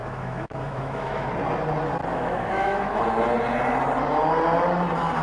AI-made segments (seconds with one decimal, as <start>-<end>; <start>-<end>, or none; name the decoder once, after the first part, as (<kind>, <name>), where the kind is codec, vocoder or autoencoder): 0.0-1.3 (autoencoder, DAC-VAE); 2.1-3.0